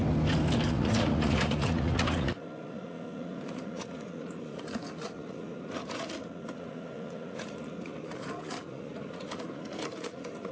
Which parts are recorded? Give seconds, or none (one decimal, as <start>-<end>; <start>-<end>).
0.0-0.7